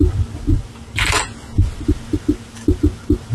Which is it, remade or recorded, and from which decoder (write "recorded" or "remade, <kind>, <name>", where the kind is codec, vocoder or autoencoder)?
recorded